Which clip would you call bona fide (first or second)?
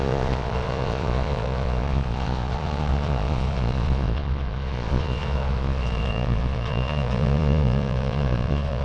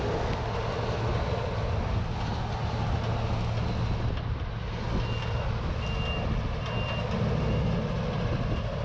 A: second